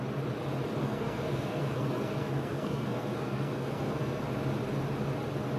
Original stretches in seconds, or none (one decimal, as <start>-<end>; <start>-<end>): 0.0-0.8; 4.2-5.6